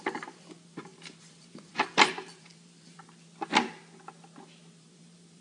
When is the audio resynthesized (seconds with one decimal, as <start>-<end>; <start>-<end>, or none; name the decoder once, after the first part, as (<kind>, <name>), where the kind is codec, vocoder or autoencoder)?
0.0-3.0 (vocoder, BigVGAN v2); 4.8-5.4